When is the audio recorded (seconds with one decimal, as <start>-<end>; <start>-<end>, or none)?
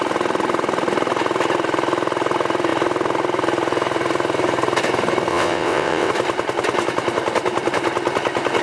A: 0.0-5.3; 6.1-8.6